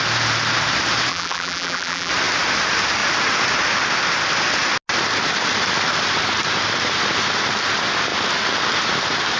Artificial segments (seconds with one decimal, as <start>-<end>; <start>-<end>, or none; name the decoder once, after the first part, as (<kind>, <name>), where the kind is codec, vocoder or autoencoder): 1.1-2.1 (vocoder, BigVGAN v2)